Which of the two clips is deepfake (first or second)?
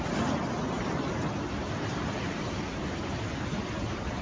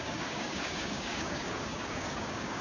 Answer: second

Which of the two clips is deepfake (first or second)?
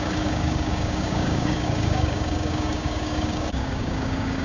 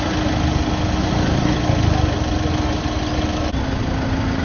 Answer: first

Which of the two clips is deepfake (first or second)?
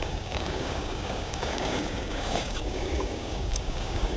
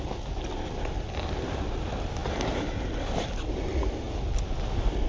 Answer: first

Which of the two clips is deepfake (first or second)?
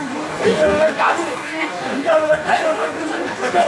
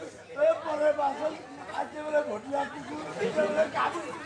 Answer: first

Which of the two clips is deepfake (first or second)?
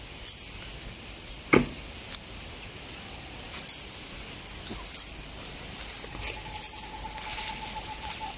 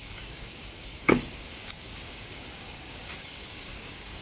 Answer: second